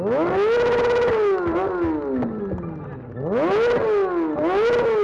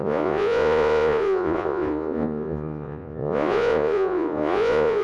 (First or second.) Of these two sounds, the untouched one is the first